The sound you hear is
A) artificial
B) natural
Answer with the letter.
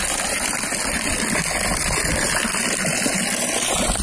B